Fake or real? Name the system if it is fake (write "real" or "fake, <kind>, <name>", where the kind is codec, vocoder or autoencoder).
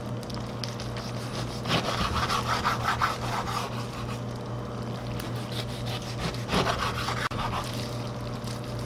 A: real